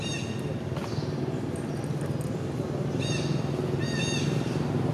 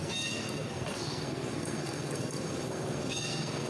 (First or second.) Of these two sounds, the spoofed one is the second